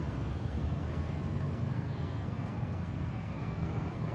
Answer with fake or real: fake